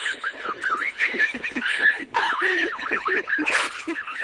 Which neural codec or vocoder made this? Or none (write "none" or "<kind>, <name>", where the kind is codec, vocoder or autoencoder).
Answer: codec, HILCodec